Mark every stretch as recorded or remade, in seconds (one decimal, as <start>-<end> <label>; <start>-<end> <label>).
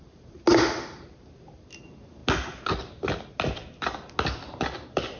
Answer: 0.0-5.2 recorded